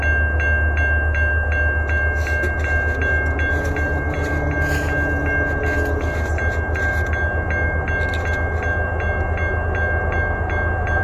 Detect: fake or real real